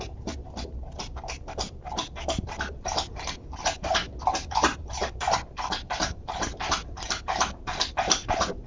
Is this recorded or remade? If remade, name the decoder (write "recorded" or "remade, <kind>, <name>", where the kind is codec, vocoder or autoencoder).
remade, vocoder, BigVGAN v2